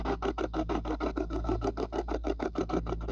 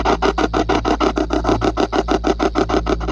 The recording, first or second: second